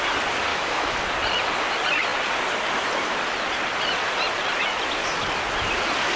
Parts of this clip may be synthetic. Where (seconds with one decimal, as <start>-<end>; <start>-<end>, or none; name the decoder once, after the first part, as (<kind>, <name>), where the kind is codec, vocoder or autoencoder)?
0.5-1.0 (autoencoder, DAC-VAE)